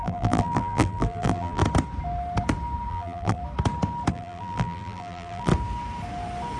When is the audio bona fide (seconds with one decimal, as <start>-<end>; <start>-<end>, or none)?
1.6-2.9; 3.4-4.1; 5.5-6.6